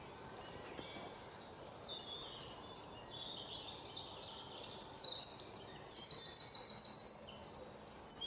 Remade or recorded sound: recorded